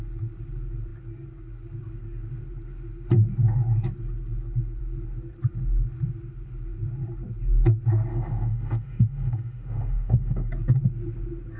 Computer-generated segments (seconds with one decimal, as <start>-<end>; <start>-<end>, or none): 8.1-10.5